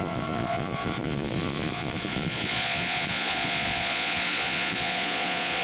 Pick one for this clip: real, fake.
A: fake